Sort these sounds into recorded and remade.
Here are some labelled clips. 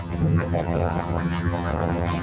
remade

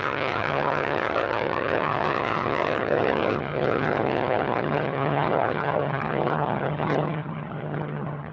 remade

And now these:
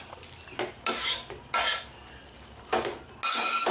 recorded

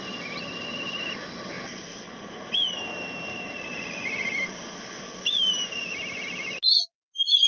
recorded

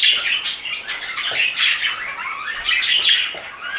recorded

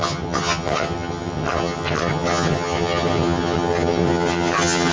remade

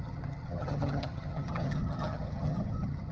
remade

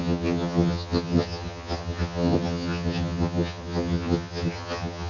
remade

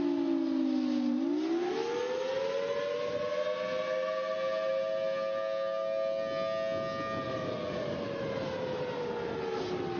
recorded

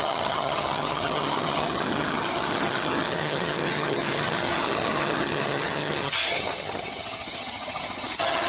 remade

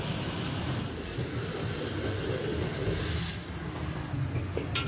recorded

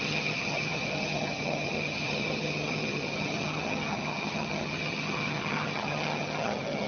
remade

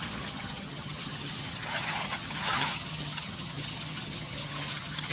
remade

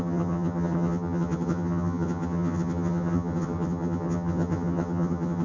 remade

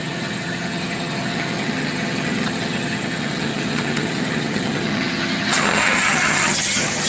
remade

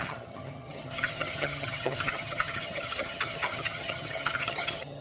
remade